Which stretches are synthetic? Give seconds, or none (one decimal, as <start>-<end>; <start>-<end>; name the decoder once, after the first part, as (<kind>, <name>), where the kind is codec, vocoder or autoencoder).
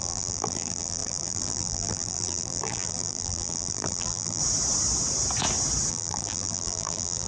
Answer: 0.0-4.4 (vocoder, BigVGAN v2); 5.9-7.3